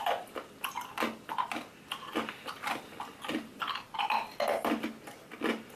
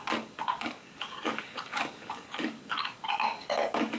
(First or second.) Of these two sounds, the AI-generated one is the second